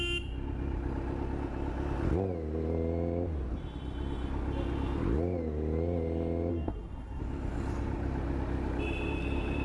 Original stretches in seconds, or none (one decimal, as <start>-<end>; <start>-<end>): 0.0-6.5; 7.2-9.6